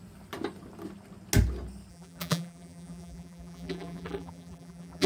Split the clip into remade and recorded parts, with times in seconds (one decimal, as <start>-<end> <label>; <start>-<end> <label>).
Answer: 0.0-1.9 recorded; 1.9-5.1 remade